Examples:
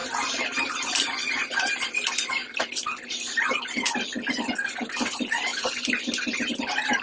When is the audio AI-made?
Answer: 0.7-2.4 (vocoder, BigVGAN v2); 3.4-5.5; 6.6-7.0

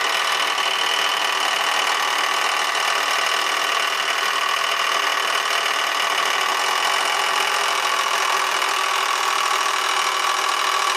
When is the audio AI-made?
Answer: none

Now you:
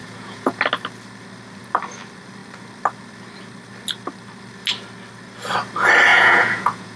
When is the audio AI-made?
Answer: 0.0-0.6 (vocoder, Vocos); 6.1-7.0

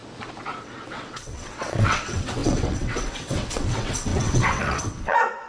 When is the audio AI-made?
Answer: 0.6-5.5 (vocoder, WaveNeXt)

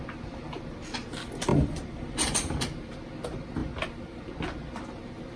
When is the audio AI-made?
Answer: 1.5-2.9 (vocoder, BigVGAN v2); 3.6-4.3